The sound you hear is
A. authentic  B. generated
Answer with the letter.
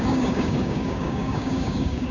B